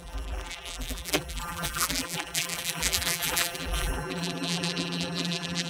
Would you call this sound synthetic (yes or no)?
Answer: yes